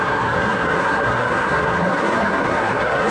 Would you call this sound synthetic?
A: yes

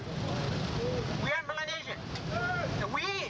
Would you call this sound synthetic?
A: no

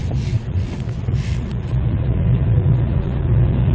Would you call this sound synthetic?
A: yes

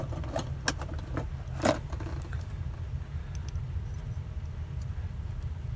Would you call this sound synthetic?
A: no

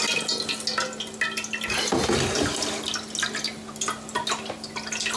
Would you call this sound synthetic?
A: no